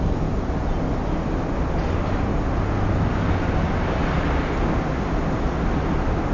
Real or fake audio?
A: real